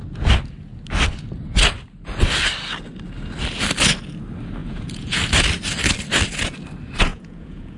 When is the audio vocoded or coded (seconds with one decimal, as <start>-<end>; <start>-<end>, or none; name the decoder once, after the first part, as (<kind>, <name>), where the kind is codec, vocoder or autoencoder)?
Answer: 4.6-5.2 (vocoder, Vocos); 7.1-7.8